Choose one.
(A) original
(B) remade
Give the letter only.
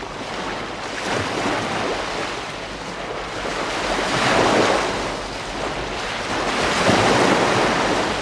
A